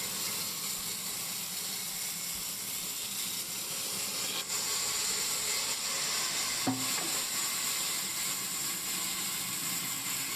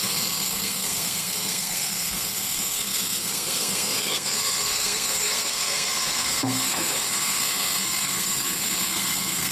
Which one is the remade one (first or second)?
second